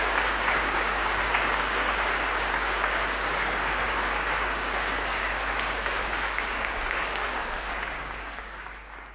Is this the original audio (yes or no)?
no